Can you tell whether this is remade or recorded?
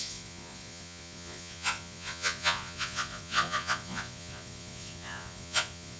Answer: remade